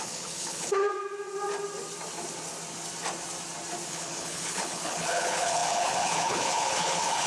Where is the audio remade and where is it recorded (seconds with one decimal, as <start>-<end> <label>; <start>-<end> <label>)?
0.0-0.8 remade; 0.8-3.9 recorded; 3.9-7.3 remade